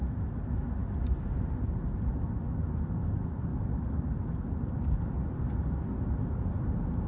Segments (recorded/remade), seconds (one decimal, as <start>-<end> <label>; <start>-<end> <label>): 0.0-7.1 recorded